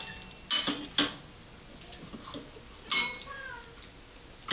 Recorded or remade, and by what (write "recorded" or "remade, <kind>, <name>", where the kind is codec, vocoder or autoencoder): recorded